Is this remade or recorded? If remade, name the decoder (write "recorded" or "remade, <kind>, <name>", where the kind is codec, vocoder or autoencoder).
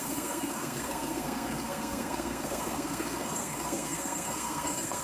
remade, codec, SNAC